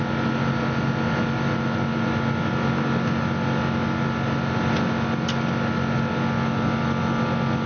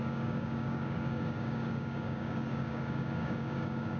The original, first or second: first